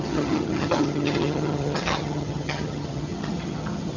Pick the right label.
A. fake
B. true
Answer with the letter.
A